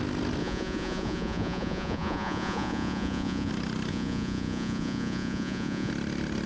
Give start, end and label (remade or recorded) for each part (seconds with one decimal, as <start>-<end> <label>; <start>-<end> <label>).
0.0-0.4 recorded; 0.4-3.5 remade; 3.5-3.9 recorded; 3.9-5.9 remade; 5.9-6.5 recorded